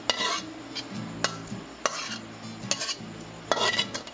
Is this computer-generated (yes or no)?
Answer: no